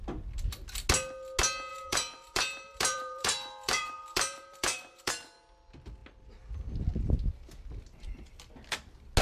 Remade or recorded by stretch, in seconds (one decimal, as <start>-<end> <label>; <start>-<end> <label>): 0.0-1.7 recorded; 1.7-5.1 remade; 5.1-9.2 recorded